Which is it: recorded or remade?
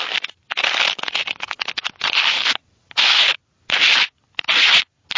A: recorded